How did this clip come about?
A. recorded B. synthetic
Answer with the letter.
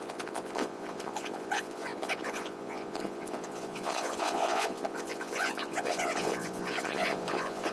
B